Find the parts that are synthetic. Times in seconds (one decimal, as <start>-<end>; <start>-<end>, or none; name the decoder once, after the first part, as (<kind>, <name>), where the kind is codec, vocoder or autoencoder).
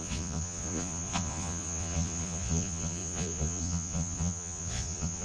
0.0-5.2 (vocoder, Vocos)